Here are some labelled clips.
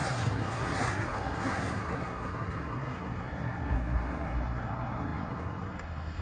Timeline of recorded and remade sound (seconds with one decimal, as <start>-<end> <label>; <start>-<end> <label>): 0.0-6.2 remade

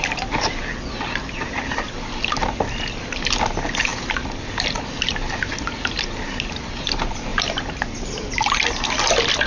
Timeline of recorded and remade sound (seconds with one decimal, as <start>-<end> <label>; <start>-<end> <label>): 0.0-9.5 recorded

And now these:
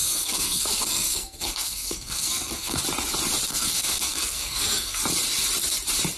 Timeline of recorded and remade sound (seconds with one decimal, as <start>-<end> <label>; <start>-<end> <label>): 0.0-2.8 remade; 2.8-3.5 recorded; 3.5-5.0 remade; 5.0-6.2 recorded